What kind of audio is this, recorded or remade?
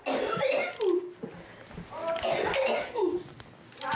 recorded